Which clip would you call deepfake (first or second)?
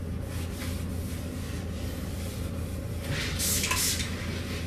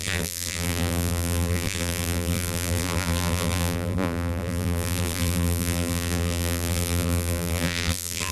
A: second